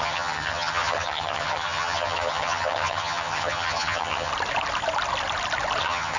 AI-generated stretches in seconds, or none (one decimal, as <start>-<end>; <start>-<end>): 0.0-4.3; 5.8-6.2